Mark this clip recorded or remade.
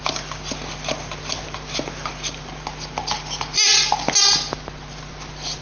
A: recorded